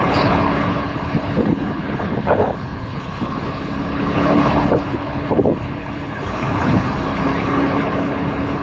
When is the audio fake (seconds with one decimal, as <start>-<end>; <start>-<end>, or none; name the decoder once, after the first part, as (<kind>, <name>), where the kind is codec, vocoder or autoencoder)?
0.0-8.6 (codec, HILCodec)